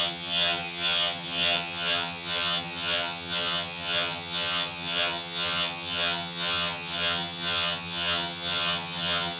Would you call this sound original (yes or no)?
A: no